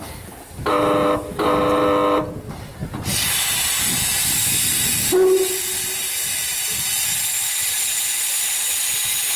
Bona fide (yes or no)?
yes